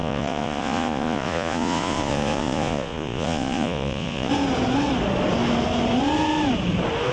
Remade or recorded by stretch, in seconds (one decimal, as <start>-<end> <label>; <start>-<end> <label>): 0.0-4.3 remade; 4.3-7.1 recorded